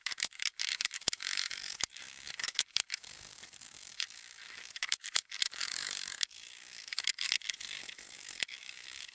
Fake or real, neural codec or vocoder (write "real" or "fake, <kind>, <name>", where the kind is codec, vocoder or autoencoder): fake, codec, DAC